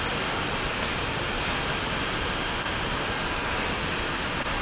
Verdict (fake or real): real